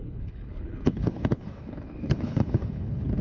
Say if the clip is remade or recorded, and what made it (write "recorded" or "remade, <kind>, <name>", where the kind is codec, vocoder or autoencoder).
remade, codec, HILCodec